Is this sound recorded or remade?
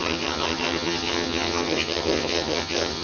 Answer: remade